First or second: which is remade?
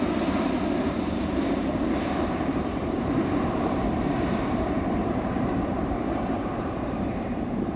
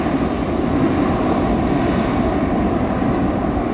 first